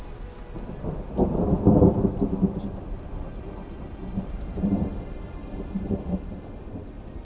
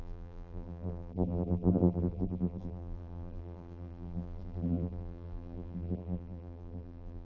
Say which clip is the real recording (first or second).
first